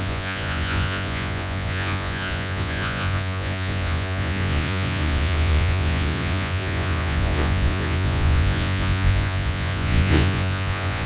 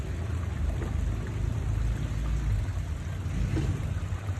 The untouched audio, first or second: second